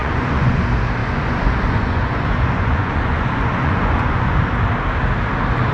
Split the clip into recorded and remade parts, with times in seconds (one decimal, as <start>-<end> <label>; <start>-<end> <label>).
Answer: 0.0-0.6 remade; 0.6-1.0 recorded; 1.0-4.4 remade; 4.4-5.7 recorded